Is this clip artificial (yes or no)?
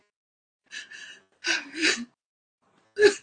no